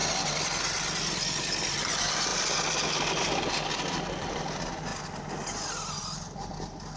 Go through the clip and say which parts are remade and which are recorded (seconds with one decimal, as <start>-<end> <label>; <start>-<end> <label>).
0.0-0.6 recorded; 0.6-4.9 remade; 4.9-6.0 recorded; 6.0-7.0 remade